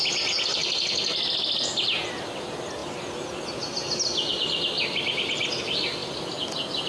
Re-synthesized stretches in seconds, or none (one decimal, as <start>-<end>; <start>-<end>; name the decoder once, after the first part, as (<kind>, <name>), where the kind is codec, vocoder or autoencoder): none